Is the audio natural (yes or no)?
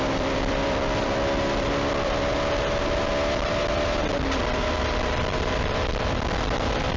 no